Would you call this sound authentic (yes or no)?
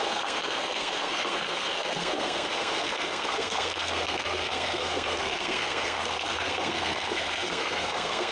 no